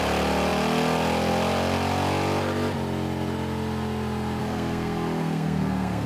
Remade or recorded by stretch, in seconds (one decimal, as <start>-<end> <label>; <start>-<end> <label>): 0.0-4.4 recorded; 4.4-6.1 remade